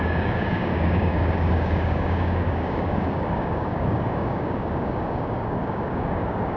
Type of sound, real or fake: fake